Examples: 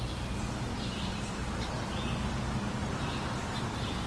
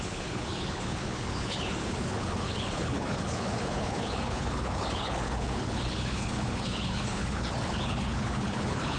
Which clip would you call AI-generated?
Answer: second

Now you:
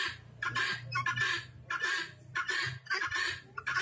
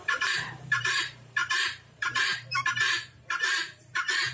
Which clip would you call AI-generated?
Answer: second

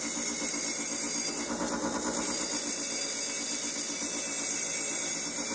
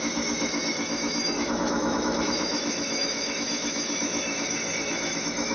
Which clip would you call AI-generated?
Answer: second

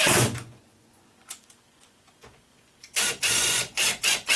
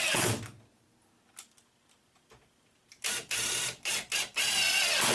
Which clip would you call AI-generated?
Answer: first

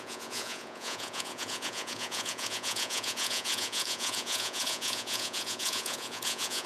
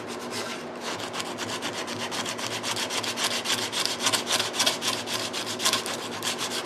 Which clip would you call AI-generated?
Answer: first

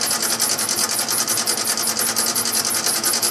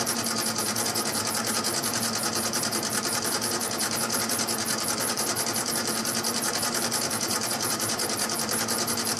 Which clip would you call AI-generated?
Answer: second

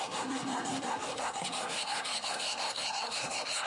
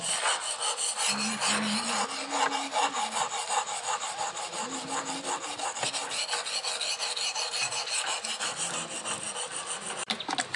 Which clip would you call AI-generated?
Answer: first